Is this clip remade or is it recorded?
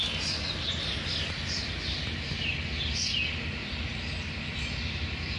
recorded